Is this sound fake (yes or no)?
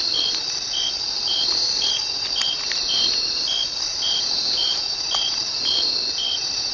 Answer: no